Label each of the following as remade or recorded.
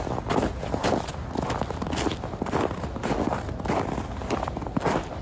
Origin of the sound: recorded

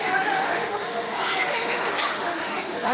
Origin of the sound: remade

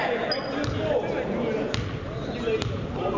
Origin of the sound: recorded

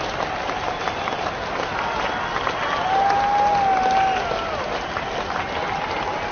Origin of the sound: recorded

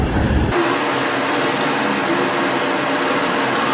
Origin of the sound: recorded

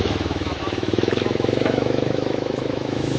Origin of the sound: remade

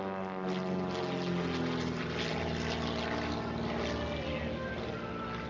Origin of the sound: recorded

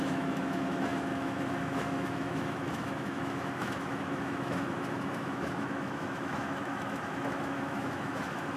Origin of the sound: remade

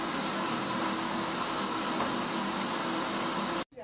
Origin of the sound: recorded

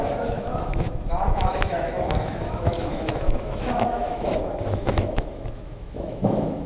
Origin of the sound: remade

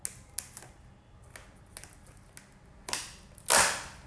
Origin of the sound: recorded